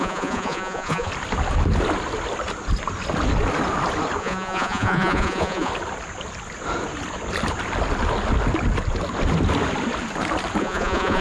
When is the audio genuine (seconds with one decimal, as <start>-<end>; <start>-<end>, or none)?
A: 1.1-4.2; 5.7-10.6